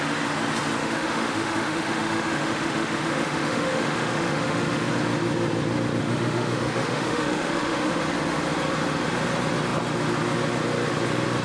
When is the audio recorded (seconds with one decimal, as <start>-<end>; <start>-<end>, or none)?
0.0-0.8; 4.9-6.0; 8.0-11.4

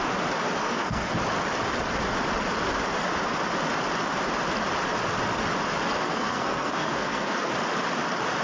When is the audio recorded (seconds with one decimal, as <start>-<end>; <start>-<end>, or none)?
0.0-0.6; 1.1-6.0; 7.5-8.4

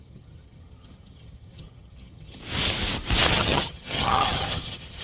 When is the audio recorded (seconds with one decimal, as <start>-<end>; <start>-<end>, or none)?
2.4-3.3